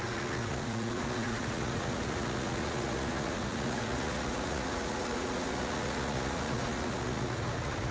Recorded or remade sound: remade